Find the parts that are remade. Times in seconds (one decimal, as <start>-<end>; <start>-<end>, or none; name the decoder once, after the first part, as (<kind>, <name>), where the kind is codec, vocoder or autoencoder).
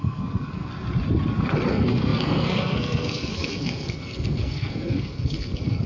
0.0-0.7 (codec, SNAC); 1.7-5.9